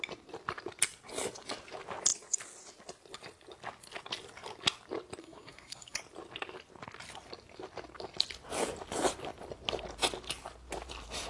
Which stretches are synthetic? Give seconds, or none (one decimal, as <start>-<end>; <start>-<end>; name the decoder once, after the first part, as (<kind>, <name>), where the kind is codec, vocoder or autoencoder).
5.2-6.0 (codec, SNAC)

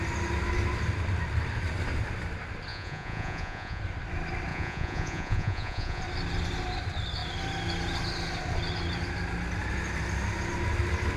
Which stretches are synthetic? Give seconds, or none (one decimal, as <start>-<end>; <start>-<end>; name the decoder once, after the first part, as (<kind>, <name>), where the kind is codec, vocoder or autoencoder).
2.7-3.8 (vocoder, Vocos); 4.5-6.0

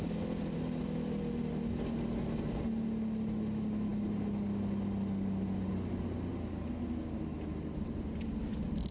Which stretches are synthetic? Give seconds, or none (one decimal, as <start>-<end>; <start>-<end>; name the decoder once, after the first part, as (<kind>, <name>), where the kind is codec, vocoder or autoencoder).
none

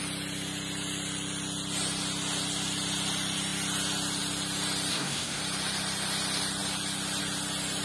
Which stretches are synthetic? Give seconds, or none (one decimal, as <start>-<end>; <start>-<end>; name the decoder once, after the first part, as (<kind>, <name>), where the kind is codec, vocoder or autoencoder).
4.9-5.4 (codec, SNAC)

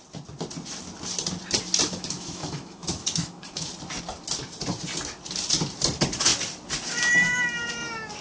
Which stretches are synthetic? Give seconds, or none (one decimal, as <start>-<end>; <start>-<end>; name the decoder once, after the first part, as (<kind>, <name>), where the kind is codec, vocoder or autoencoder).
1.8-3.7 (autoencoder, DAC-VAE)

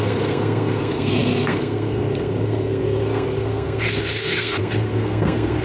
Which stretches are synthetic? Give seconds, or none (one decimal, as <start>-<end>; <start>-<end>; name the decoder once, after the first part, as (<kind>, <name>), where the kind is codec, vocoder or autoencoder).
0.0-5.6 (codec, SNAC)

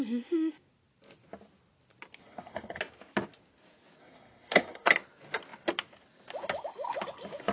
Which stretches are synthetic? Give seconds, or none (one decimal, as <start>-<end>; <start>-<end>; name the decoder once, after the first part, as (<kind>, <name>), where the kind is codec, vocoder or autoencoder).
2.2-2.8 (codec, SNAC); 4.0-4.9

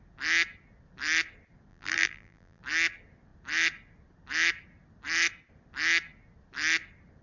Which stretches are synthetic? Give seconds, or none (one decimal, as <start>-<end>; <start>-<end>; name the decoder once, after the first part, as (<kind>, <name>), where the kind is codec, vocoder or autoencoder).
1.7-2.6 (vocoder, BigVGAN v2)